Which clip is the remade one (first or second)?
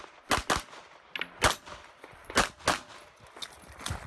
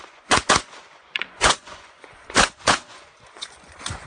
second